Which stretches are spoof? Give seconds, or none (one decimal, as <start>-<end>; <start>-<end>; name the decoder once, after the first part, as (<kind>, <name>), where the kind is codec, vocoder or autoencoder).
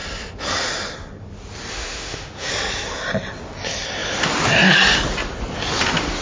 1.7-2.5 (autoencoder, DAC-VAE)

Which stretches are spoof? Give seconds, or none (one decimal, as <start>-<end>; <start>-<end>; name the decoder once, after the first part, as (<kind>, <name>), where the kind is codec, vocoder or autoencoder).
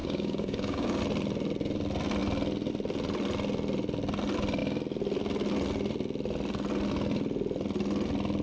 0.0-1.0 (codec, DAC)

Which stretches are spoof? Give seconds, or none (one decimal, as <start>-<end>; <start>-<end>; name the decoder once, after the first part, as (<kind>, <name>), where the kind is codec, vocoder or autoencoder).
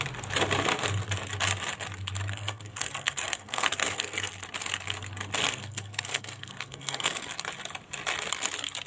2.3-4.3 (codec, SNAC); 5.4-7.4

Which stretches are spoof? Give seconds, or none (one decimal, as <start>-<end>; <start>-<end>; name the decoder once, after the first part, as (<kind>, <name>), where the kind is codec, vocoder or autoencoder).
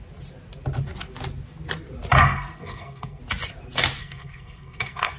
2.2-3.2 (codec, SNAC); 4.0-5.2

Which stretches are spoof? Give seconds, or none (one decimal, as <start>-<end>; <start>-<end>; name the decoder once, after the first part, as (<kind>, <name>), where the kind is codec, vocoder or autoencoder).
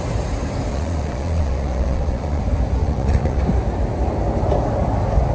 0.7-2.4 (vocoder, Vocos); 2.8-3.4